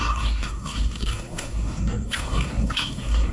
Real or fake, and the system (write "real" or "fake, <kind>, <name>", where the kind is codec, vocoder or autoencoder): fake, codec, SNAC